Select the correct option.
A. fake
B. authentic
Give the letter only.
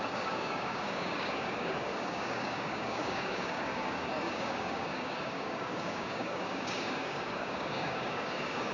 A